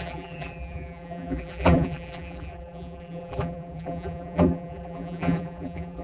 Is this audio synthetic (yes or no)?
yes